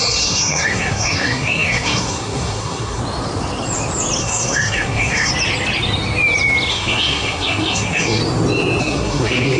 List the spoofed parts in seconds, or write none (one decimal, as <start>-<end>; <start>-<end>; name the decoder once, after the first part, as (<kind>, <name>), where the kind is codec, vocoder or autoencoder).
0.0-3.0 (codec, SNAC); 4.2-5.3; 6.7-8.2; 8.8-9.6